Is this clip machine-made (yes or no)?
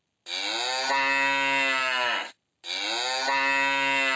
no